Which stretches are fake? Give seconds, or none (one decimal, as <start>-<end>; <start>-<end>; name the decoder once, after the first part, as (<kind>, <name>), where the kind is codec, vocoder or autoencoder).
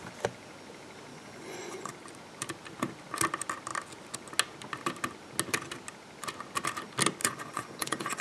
1.1-1.9 (vocoder, Vocos); 7.2-8.2